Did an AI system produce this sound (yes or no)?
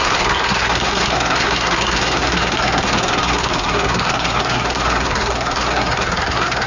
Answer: yes